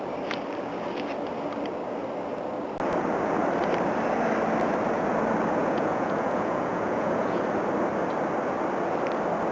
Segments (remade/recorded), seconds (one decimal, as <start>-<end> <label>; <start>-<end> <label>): 0.0-5.6 recorded; 5.6-7.4 remade; 7.4-9.5 recorded